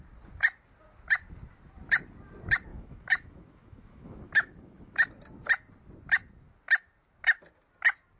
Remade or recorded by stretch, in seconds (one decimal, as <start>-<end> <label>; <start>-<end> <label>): 0.0-2.7 recorded; 2.7-5.1 remade; 5.1-8.2 recorded